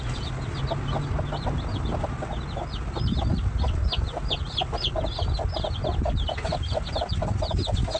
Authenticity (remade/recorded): recorded